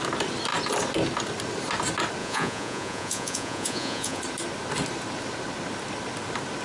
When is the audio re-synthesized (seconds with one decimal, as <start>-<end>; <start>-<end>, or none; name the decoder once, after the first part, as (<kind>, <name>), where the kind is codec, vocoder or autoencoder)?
2.2-4.2 (vocoder, Vocos)